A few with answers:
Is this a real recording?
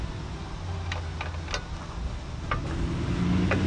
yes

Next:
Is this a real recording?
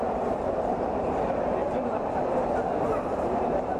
no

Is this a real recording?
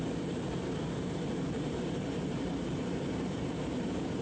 no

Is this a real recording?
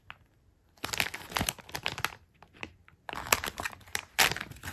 yes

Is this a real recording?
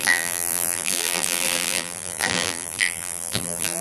no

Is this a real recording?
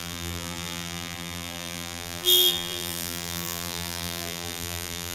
no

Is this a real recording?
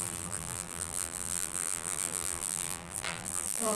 no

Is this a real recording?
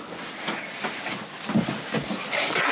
yes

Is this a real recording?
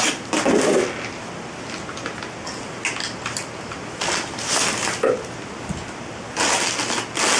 yes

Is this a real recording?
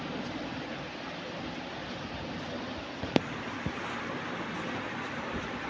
no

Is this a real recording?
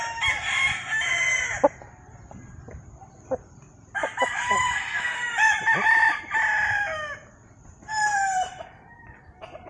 yes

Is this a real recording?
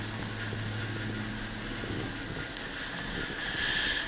yes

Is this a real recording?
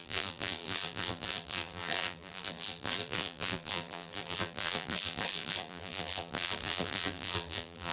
no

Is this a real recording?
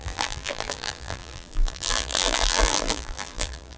no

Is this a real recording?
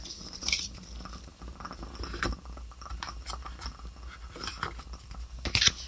yes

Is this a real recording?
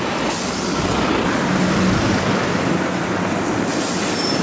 no